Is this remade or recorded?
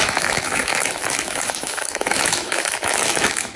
remade